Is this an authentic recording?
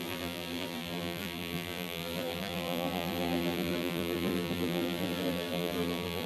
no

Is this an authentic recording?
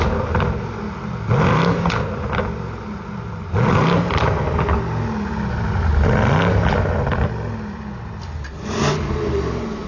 yes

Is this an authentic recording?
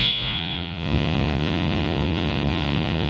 no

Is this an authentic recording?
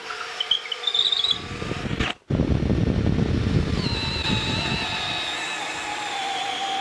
yes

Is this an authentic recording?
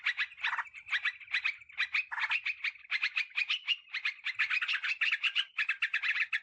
yes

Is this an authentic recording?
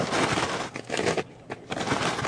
yes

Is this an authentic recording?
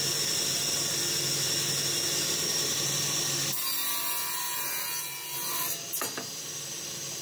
yes